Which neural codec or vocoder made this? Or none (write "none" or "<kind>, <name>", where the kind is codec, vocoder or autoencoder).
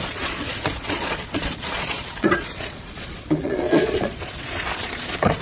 vocoder, Vocos